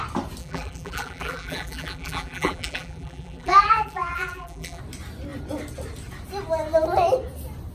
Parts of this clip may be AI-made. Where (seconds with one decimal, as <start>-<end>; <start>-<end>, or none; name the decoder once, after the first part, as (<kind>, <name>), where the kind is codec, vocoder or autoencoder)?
0.4-4.8 (vocoder, BigVGAN v2)